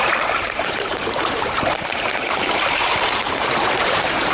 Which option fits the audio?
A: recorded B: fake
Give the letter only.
B